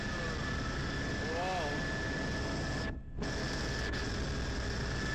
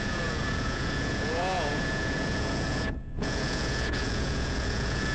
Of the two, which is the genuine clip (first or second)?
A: first